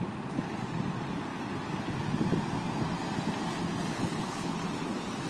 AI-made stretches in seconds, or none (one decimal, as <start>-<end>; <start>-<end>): 3.9-4.6